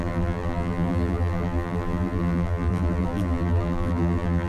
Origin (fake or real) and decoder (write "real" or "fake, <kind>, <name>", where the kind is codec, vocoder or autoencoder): fake, vocoder, BigVGAN v2